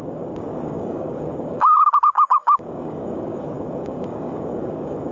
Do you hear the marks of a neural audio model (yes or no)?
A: yes